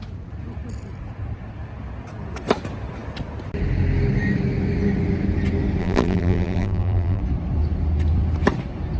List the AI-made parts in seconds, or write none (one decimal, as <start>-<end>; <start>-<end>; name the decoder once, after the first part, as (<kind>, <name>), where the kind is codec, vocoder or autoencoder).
5.8-7.2 (vocoder, BigVGAN v2)